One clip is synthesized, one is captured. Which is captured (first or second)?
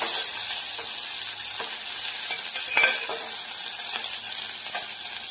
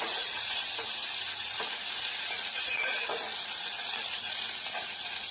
first